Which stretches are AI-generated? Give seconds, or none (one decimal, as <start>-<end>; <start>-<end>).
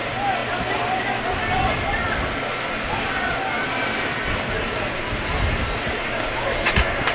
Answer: 0.0-0.4; 4.0-7.1